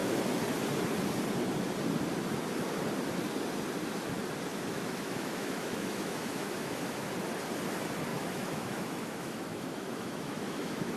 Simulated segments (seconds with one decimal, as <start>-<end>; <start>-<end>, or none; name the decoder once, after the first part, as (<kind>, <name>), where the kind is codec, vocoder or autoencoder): 4.5-7.1 (autoencoder, DAC-VAE); 8.1-11.0

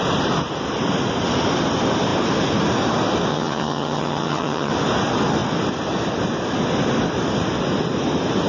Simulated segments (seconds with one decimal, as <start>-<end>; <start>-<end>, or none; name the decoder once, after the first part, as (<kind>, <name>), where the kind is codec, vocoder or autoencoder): 3.3-4.7 (vocoder, HiFi-GAN)

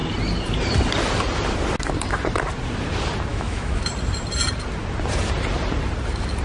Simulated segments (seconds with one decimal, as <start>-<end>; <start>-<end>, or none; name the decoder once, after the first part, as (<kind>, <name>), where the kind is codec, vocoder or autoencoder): 3.3-3.9 (autoencoder, DAC-VAE)